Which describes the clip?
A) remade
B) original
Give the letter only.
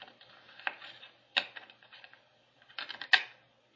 B